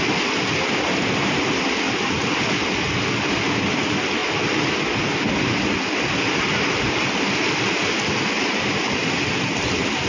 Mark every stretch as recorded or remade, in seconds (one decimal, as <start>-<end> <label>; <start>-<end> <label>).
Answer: 0.0-10.1 recorded